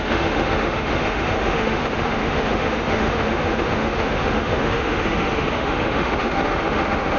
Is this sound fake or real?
fake